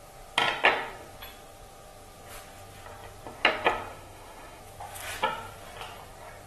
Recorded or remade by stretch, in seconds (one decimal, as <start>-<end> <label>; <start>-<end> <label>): 0.0-3.9 recorded; 3.9-4.6 remade; 4.6-6.5 recorded